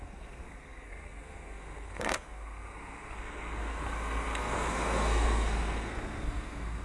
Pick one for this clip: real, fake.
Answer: fake